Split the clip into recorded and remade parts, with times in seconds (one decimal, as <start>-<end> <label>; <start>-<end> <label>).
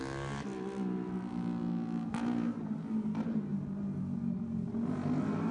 0.0-5.5 recorded